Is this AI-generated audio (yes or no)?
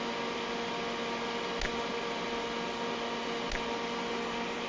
no